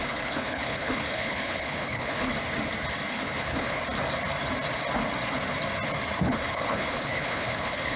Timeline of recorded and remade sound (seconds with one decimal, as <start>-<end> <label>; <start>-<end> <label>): 0.0-2.3 remade; 2.3-3.1 recorded; 3.1-3.8 remade; 3.8-6.2 recorded; 6.2-8.0 remade